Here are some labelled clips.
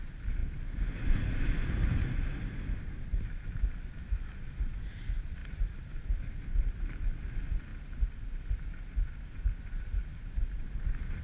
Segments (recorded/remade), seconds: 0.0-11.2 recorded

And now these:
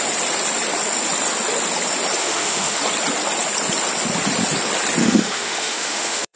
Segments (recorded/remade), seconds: 0.0-2.2 recorded; 2.2-2.8 remade; 2.8-5.0 recorded; 5.0-6.4 remade

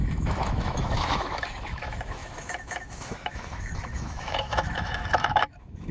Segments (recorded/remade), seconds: 0.0-5.9 remade

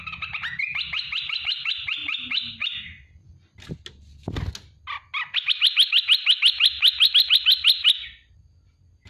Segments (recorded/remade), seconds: 0.0-9.1 recorded

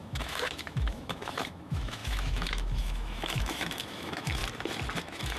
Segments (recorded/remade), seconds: 0.0-4.4 remade; 4.4-5.0 recorded; 5.0-5.4 remade

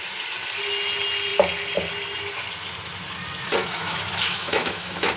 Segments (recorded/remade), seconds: 0.0-3.6 recorded; 3.6-5.2 remade

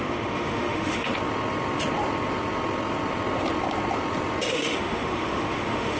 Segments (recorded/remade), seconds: 0.0-1.1 remade; 1.1-4.5 recorded; 4.5-6.0 remade